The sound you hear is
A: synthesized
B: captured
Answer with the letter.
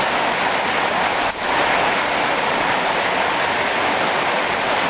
B